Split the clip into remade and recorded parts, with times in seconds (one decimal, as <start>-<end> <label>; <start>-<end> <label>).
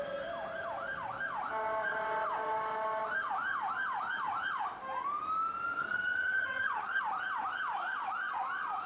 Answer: 0.0-5.8 recorded; 5.8-7.0 remade; 7.0-8.9 recorded